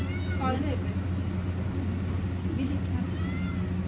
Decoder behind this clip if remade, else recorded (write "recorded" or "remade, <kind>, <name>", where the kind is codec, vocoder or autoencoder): recorded